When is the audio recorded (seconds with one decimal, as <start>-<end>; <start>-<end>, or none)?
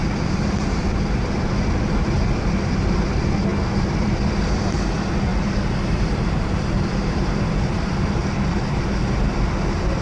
0.0-5.3; 8.1-10.0